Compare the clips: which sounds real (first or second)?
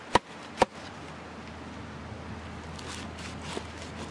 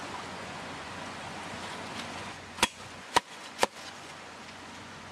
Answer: first